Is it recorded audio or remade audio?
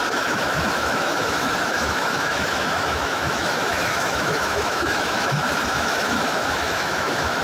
remade